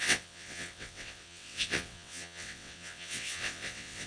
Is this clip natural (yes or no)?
no